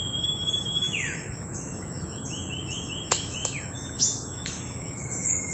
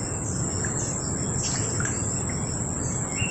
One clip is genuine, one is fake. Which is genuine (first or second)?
second